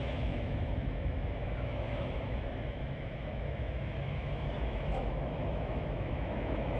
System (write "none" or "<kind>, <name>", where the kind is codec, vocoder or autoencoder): autoencoder, DAC-VAE